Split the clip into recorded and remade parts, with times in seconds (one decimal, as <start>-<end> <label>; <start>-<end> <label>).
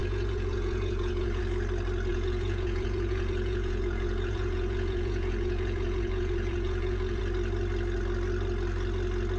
0.0-1.4 remade; 1.4-2.1 recorded; 2.1-7.2 remade; 7.2-9.4 recorded